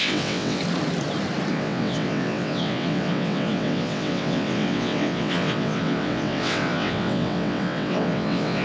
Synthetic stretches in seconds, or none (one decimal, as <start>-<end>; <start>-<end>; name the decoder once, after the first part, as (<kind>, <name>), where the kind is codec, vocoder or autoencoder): 0.0-0.6 (vocoder, WaveNeXt); 1.5-8.6